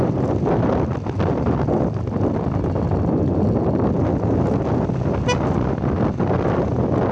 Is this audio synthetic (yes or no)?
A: no